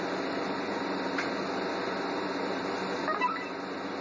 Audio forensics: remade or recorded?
recorded